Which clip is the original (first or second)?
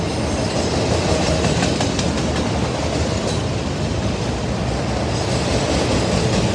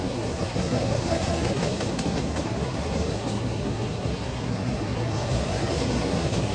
first